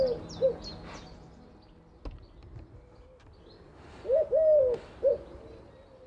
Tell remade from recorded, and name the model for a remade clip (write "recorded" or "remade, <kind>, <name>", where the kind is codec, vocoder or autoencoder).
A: recorded